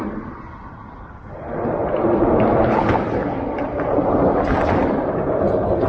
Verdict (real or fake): fake